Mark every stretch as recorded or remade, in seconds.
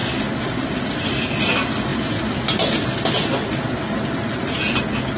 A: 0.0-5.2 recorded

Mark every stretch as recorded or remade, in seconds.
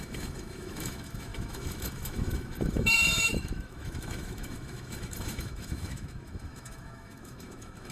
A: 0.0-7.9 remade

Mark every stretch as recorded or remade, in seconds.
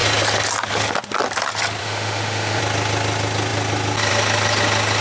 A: 0.0-1.8 recorded; 1.8-2.6 remade; 2.6-5.0 recorded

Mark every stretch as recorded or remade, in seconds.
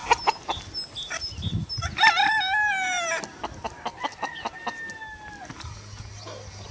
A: 0.0-6.7 recorded